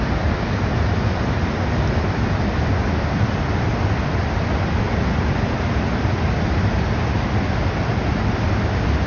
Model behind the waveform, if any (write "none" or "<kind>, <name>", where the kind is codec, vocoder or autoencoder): none